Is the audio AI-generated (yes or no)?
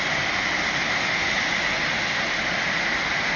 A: no